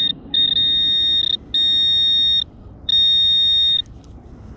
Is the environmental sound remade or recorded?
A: recorded